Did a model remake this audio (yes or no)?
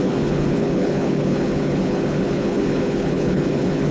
yes